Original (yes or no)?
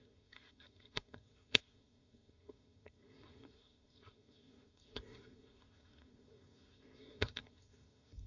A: no